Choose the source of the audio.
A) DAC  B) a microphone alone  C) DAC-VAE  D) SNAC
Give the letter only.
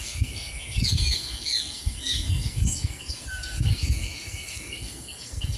D